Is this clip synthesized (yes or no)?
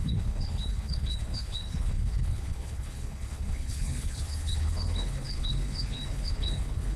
yes